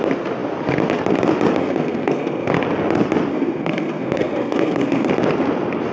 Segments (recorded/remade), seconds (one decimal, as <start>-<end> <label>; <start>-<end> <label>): 0.0-1.6 recorded; 1.6-2.5 remade; 2.5-3.3 recorded; 3.3-5.1 remade; 5.1-5.9 recorded